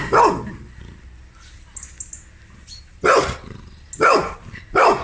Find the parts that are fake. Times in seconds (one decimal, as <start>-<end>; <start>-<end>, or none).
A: none